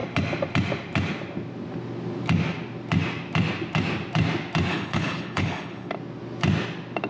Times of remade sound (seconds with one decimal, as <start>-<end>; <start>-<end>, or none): 4.7-5.9